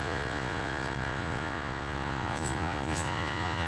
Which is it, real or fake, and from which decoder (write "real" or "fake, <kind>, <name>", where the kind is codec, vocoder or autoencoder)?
fake, vocoder, Vocos